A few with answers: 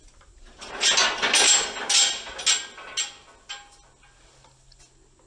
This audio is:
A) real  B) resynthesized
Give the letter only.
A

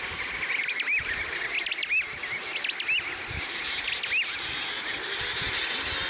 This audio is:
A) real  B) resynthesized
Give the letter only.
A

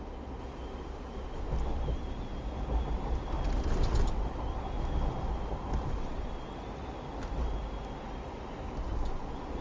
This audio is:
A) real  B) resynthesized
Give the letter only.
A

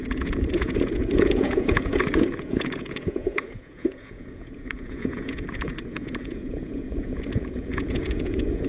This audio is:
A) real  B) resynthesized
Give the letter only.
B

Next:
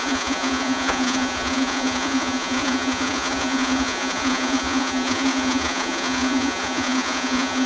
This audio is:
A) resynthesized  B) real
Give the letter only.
A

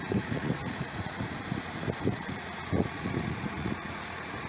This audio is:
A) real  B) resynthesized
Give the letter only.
B